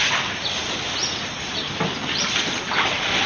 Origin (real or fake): real